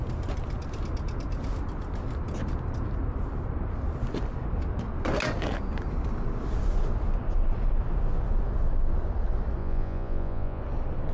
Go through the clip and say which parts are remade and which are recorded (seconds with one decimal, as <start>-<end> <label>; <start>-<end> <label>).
0.0-9.6 recorded; 9.6-10.6 remade; 10.6-11.1 recorded